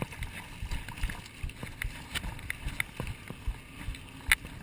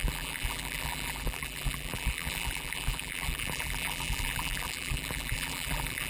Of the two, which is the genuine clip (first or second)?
first